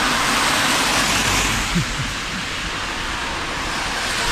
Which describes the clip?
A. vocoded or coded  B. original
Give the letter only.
B